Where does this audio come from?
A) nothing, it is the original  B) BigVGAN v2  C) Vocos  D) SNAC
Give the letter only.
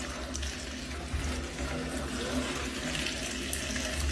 A